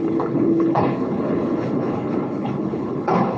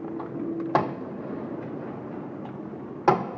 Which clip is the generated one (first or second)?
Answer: first